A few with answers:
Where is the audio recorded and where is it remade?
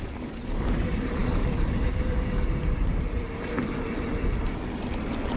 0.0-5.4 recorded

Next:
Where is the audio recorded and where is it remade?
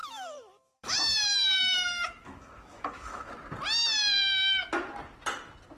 0.0-3.3 remade; 3.3-5.8 recorded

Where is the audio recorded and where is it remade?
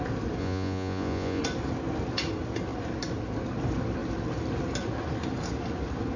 0.0-0.4 recorded; 0.4-1.4 remade; 1.4-6.2 recorded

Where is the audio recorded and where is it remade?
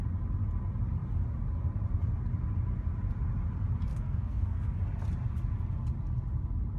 0.0-3.9 recorded; 3.9-4.8 remade; 4.8-6.8 recorded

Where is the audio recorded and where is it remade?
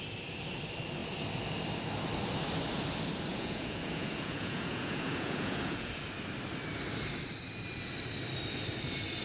0.0-3.3 recorded; 3.3-6.0 remade; 6.0-9.2 recorded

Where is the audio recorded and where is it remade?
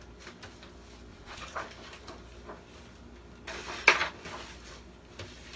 0.0-1.1 recorded; 1.1-1.6 remade; 1.6-5.6 recorded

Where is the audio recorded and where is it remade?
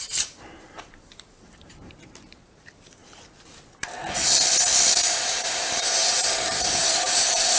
0.0-3.0 remade; 3.0-5.0 recorded; 5.0-7.6 remade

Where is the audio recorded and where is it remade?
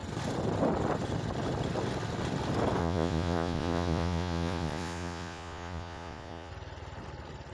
0.0-2.8 recorded; 2.8-6.5 remade; 6.5-7.5 recorded